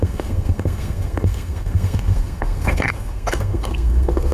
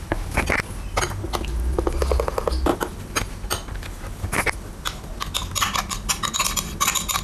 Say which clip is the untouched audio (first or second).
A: second